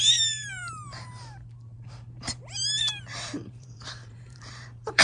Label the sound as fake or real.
fake